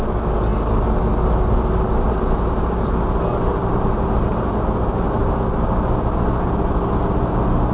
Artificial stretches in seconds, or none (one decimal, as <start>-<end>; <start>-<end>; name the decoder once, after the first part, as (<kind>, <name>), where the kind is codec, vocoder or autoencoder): none